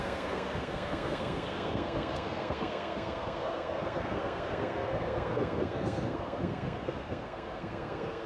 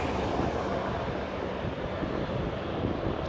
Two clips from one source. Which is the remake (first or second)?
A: first